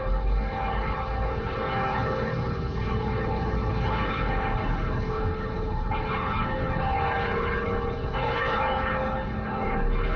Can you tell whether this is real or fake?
fake